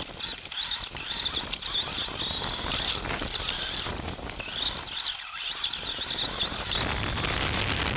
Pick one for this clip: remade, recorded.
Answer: recorded